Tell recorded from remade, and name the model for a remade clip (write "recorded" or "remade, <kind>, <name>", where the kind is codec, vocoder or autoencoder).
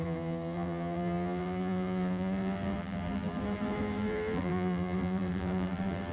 remade, vocoder, BigVGAN v2